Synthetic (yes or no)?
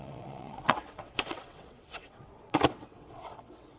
yes